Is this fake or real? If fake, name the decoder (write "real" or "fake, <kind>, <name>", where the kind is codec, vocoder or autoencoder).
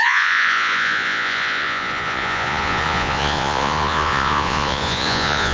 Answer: fake, vocoder, Vocos